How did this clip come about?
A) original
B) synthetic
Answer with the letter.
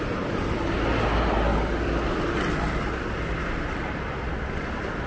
A